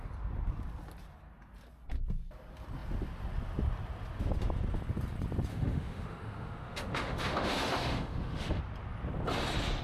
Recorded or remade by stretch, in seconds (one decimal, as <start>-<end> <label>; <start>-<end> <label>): 0.0-5.5 recorded; 5.5-8.6 remade; 8.6-9.8 recorded